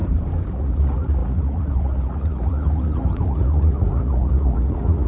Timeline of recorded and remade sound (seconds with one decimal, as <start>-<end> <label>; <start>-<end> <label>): 0.0-0.5 recorded; 0.5-5.1 remade